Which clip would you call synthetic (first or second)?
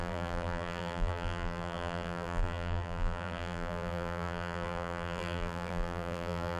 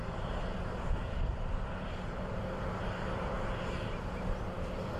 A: first